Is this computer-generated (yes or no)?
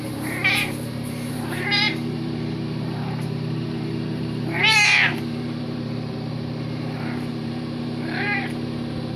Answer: yes